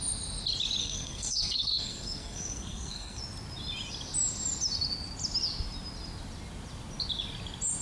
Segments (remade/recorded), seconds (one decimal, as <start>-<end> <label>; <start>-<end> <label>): 0.0-0.8 recorded; 0.8-3.2 remade; 3.2-7.8 recorded